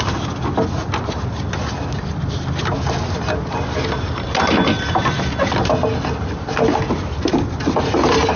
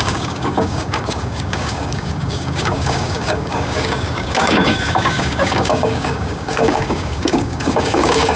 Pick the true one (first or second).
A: first